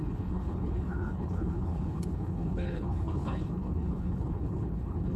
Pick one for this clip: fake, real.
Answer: fake